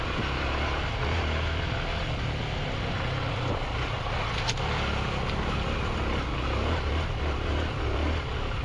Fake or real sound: real